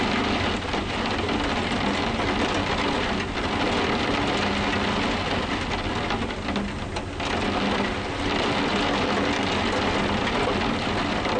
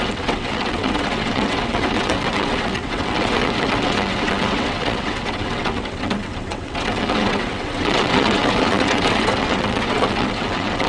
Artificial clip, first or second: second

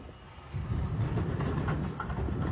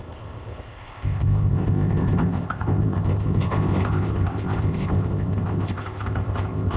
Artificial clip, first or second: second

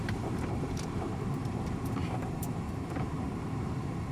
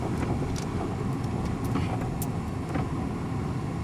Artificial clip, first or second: first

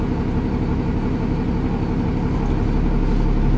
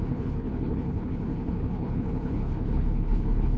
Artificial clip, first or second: second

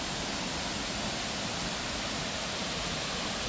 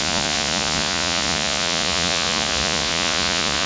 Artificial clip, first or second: second